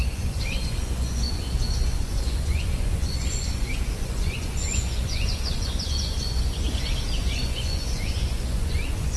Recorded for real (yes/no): no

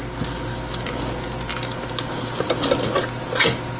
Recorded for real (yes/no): yes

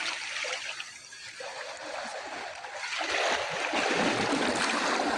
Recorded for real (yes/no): yes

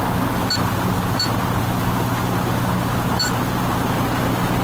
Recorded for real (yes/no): yes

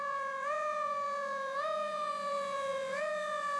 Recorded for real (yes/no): no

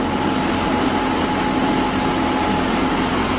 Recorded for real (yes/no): yes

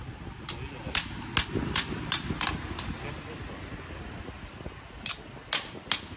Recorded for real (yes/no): yes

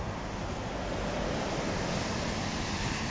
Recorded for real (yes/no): yes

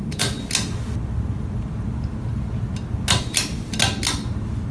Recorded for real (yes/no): yes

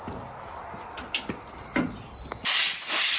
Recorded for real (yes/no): yes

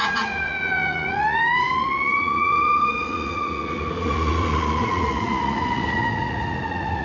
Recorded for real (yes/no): no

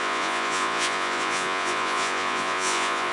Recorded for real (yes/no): no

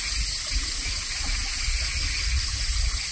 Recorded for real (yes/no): yes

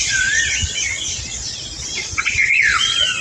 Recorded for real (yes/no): no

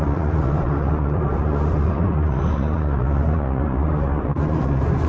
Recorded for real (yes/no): no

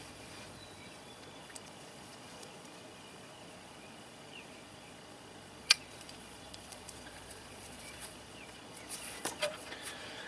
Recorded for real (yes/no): no